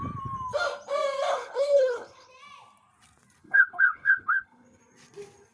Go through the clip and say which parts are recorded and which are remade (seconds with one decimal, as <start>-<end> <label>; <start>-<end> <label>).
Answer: 0.0-1.3 recorded; 1.3-2.3 remade; 2.3-3.4 recorded; 3.4-4.8 remade; 4.8-5.5 recorded